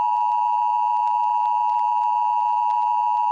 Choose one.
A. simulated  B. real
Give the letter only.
B